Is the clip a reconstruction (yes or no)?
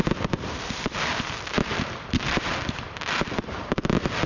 yes